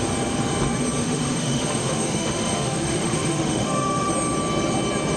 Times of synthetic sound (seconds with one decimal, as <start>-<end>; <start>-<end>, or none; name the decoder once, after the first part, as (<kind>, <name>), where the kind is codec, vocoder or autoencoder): 1.0-4.1 (autoencoder, DAC-VAE)